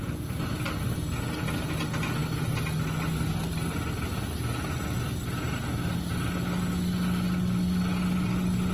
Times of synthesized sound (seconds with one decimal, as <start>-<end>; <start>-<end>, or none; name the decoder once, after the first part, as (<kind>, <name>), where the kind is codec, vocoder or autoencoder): none